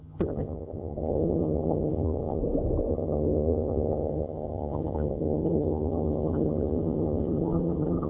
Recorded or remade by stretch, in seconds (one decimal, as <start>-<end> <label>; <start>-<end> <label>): 0.0-2.4 remade; 2.4-2.9 recorded; 2.9-8.1 remade